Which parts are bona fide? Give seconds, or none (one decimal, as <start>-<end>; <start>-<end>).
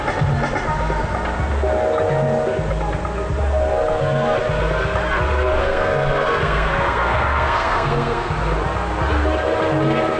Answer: 0.0-5.6; 8.3-10.2